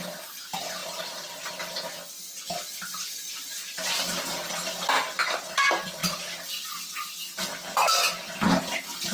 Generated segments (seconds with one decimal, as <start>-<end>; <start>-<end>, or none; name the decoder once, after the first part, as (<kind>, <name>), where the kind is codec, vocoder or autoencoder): none